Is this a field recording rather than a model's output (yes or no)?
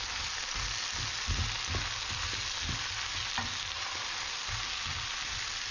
yes